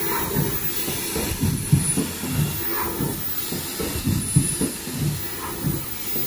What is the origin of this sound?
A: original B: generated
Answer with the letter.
A